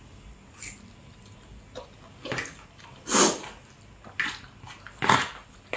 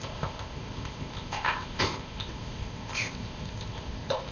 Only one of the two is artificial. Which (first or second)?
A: second